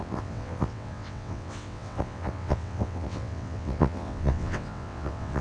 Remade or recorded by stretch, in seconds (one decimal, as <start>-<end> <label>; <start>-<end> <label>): 0.0-5.4 remade

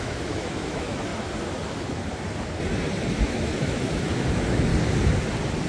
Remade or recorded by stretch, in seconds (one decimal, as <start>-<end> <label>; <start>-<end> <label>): 0.0-1.1 remade; 1.1-3.2 recorded; 3.2-4.7 remade; 4.7-5.7 recorded

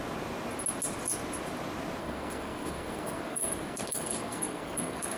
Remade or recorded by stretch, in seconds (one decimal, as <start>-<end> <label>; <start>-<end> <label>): 0.0-2.0 recorded; 2.0-5.2 remade

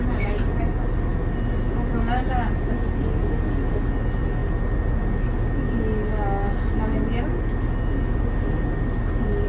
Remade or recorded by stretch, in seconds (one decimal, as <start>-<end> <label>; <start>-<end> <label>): 0.0-9.5 recorded

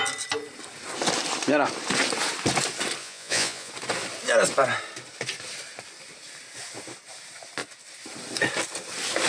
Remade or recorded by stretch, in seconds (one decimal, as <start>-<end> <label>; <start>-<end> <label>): 0.0-3.0 recorded; 3.0-3.7 remade; 3.7-9.3 recorded

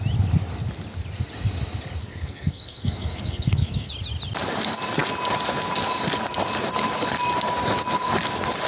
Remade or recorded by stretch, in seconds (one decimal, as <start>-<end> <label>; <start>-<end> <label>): 0.0-2.0 recorded; 2.0-3.9 remade; 3.9-8.7 recorded